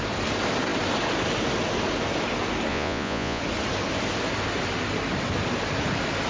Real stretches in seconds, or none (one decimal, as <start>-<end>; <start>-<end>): 0.0-2.7; 3.4-6.3